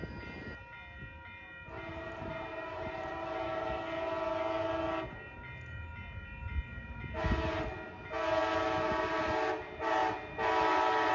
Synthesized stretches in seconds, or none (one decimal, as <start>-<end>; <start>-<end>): 1.9-3.8